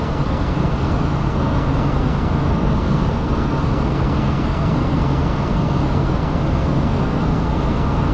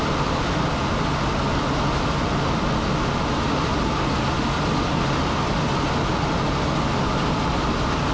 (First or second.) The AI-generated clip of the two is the first